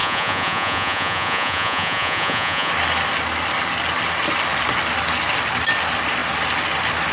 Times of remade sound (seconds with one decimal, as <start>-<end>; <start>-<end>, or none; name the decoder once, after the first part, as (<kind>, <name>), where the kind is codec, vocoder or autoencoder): 0.0-2.7 (vocoder, Vocos)